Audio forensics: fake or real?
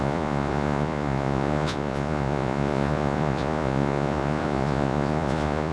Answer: fake